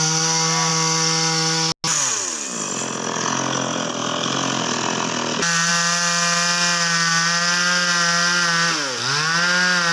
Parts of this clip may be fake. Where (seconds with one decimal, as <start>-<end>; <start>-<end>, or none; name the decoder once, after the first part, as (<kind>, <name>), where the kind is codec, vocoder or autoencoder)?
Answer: none